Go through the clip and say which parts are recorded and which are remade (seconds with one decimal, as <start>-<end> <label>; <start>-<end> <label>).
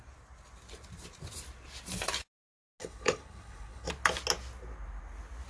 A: 0.0-2.8 recorded; 2.8-3.9 remade; 3.9-5.5 recorded